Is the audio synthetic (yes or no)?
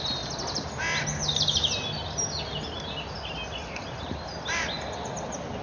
no